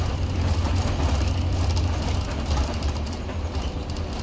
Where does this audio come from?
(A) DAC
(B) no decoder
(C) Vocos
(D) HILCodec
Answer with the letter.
B